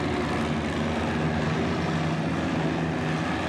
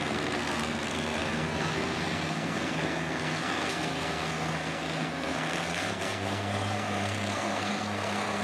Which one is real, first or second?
first